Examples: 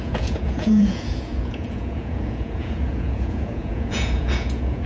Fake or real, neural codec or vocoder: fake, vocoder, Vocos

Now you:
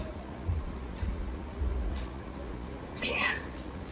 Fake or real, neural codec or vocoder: fake, vocoder, Vocos